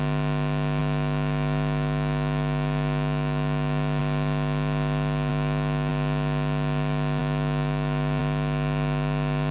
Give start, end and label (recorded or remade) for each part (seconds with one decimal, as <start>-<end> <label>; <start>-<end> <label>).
0.0-0.8 recorded; 0.8-4.0 remade; 4.0-5.3 recorded; 5.3-5.9 remade; 5.9-7.2 recorded; 7.2-8.2 remade; 8.2-9.5 recorded